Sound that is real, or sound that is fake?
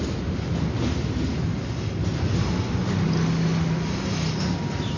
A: real